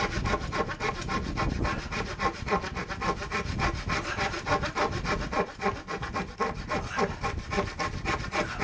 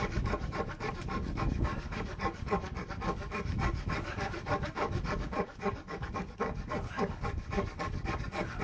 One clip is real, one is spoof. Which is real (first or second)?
first